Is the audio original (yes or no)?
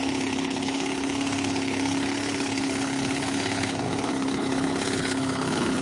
no